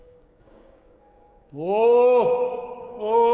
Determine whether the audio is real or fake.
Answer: fake